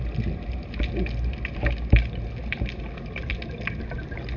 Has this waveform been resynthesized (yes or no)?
no